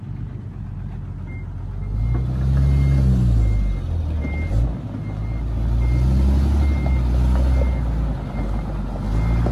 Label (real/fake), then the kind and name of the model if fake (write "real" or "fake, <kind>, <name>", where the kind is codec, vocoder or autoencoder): real